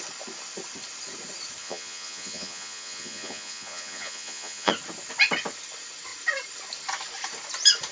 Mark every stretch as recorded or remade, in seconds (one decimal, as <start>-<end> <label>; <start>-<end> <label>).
0.0-1.6 recorded; 1.6-4.7 remade; 4.7-7.9 recorded

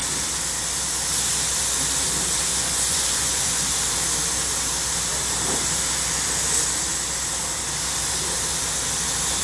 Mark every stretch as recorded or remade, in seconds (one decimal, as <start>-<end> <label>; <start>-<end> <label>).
0.0-2.5 recorded; 2.5-3.7 remade; 3.7-9.4 recorded